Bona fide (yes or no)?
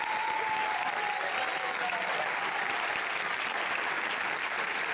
yes